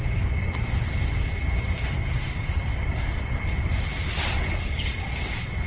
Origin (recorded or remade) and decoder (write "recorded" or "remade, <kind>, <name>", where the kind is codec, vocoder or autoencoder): recorded